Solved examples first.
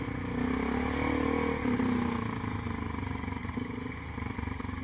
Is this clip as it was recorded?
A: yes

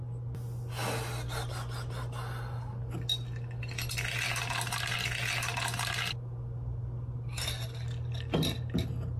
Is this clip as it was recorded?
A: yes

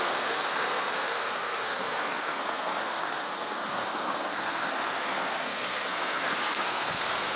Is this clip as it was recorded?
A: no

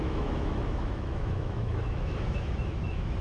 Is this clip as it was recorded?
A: no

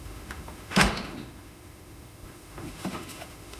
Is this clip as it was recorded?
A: no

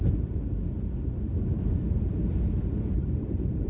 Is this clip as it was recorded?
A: yes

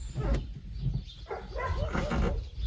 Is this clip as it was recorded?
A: yes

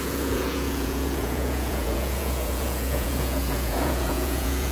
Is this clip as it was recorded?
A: no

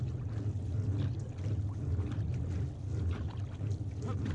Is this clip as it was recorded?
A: yes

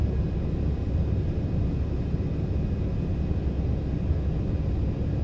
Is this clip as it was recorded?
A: yes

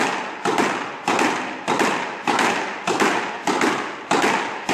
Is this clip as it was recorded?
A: yes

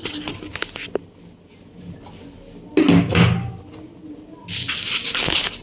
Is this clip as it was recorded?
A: yes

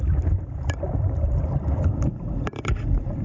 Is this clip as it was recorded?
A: yes